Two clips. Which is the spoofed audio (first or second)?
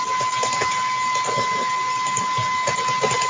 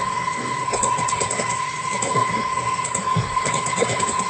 second